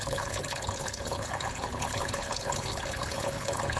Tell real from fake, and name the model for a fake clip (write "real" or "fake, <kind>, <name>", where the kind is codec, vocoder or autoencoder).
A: fake, codec, HILCodec